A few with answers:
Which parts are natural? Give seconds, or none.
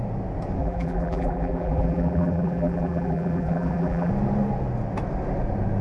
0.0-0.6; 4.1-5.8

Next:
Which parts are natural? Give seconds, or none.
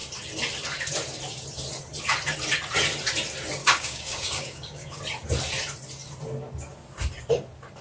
0.0-3.6; 5.0-7.8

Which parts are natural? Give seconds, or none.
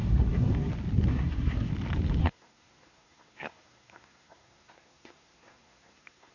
0.7-1.1; 1.7-2.2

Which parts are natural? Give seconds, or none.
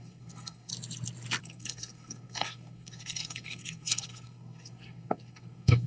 0.7-1.4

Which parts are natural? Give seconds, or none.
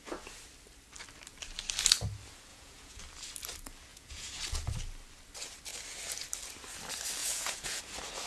0.0-2.5; 3.0-3.9; 4.4-7.2; 7.8-8.3